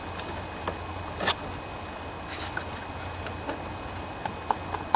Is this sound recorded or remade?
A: recorded